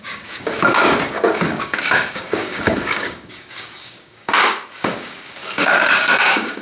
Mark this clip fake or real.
fake